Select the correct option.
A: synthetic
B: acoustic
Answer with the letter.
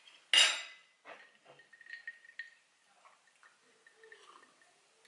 B